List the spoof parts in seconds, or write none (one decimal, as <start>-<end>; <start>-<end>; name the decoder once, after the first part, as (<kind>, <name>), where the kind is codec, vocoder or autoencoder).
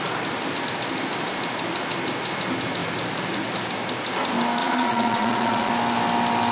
4.6-5.7 (vocoder, Vocos)